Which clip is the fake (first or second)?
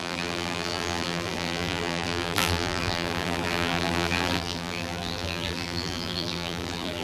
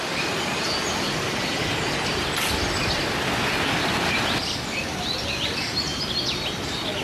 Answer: first